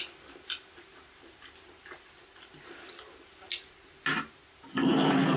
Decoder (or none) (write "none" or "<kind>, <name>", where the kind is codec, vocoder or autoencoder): none